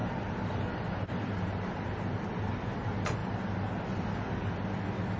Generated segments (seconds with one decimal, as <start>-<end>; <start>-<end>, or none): none